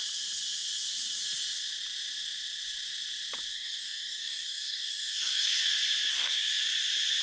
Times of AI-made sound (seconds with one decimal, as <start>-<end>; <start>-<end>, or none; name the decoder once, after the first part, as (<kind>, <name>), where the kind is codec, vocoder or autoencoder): 3.5-5.6 (codec, DAC); 6.1-6.6